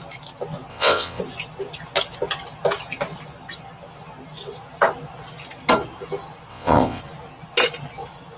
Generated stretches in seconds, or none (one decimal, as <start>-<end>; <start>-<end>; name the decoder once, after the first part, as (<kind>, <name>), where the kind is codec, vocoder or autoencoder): 0.7-1.2 (vocoder, WaveNeXt); 6.5-7.0